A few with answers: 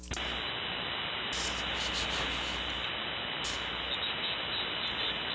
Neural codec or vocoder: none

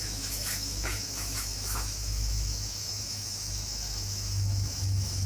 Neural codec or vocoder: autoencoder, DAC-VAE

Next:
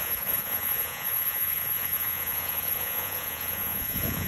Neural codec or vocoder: vocoder, Vocos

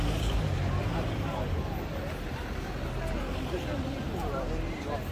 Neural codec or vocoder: none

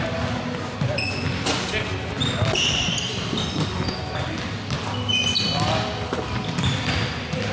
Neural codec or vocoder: none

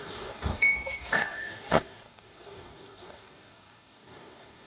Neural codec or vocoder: codec, DAC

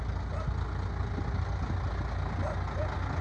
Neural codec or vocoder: none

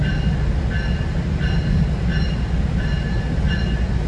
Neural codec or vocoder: none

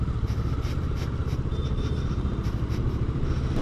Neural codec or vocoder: none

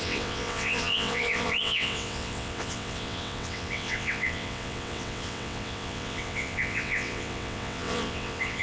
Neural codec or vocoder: vocoder, WaveNeXt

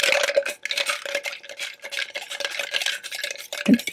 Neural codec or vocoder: none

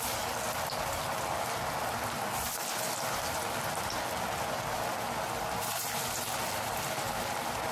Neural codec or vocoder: none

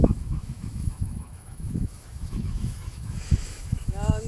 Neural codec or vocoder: autoencoder, DAC-VAE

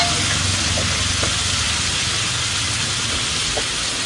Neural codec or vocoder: none